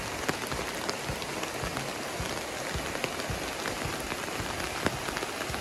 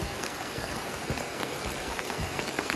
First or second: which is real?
first